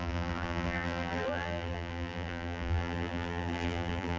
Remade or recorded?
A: remade